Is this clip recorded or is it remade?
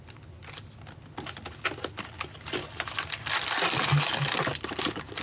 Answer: recorded